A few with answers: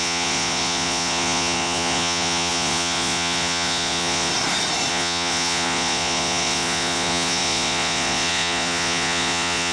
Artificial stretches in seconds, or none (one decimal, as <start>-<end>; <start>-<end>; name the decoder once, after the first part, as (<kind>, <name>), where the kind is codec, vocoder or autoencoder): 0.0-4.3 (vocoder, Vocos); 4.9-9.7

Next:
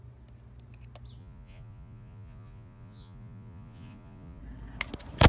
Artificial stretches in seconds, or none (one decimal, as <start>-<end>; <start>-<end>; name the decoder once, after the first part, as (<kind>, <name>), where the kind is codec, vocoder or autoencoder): 1.2-4.4 (vocoder, Vocos)

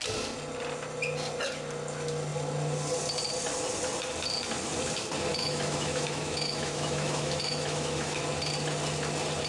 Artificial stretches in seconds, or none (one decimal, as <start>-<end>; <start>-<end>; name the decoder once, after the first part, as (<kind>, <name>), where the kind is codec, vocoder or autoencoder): 5.3-8.2 (autoencoder, DAC-VAE)

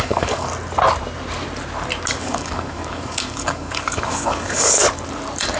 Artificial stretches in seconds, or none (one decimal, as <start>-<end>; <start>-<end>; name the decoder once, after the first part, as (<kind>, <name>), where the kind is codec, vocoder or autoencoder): 0.0-0.5 (codec, DAC); 2.2-4.8

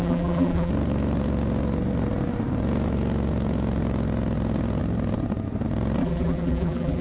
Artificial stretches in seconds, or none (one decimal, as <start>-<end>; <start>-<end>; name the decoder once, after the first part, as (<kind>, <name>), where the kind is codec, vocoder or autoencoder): 0.0-0.7 (vocoder, BigVGAN v2); 6.0-7.0

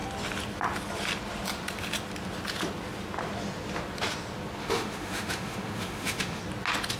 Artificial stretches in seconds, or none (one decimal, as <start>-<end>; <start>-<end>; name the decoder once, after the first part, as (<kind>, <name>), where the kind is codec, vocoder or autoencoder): 4.6-6.4 (autoencoder, DAC-VAE)

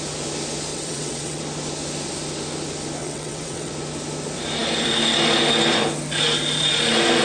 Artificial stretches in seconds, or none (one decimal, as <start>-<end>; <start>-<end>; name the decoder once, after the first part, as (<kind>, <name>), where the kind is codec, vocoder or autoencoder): 0.7-1.4 (vocoder, WaveNeXt); 3.0-3.7

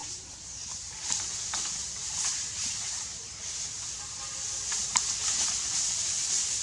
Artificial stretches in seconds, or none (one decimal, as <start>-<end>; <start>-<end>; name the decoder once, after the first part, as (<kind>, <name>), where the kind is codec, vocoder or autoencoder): 2.3-3.4 (vocoder, BigVGAN v2)